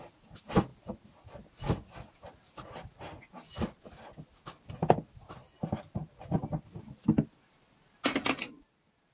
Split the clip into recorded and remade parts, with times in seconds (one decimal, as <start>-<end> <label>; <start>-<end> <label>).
0.0-9.1 recorded